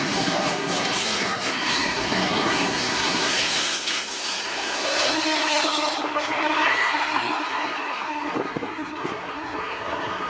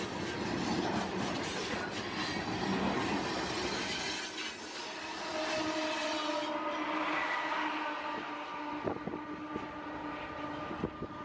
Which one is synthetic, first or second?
first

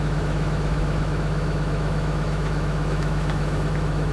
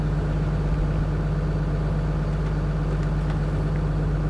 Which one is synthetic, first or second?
first